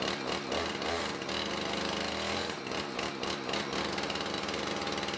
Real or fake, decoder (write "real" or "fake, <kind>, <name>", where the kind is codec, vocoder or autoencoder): real